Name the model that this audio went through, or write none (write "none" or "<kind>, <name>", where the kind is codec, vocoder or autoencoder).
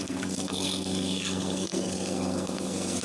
codec, SNAC